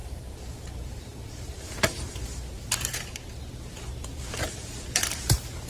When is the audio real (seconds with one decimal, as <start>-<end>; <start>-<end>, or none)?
none